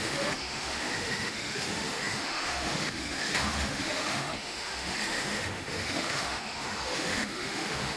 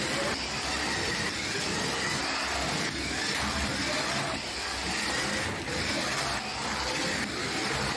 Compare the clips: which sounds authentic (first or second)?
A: second